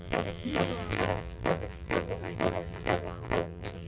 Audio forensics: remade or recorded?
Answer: remade